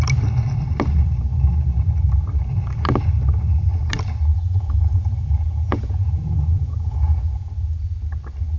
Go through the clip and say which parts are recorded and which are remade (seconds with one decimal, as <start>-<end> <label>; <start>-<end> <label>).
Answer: 0.0-4.3 recorded; 4.3-7.5 remade; 7.5-8.6 recorded